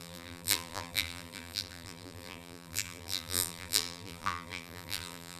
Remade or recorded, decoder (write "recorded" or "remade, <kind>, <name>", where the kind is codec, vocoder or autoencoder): remade, vocoder, BigVGAN v2